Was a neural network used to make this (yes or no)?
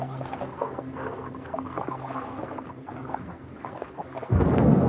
yes